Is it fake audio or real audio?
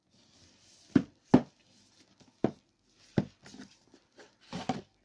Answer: real